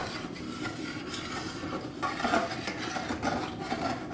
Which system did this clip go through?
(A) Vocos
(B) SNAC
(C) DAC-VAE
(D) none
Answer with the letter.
D